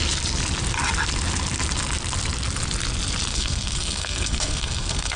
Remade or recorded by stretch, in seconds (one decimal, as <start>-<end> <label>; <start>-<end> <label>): 0.0-3.3 recorded; 3.3-5.2 remade